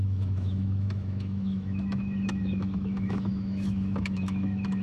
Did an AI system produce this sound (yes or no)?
yes